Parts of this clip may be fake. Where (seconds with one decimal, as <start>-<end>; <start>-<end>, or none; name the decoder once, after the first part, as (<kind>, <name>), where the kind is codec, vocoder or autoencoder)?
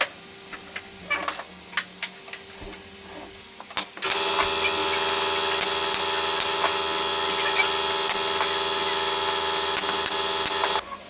none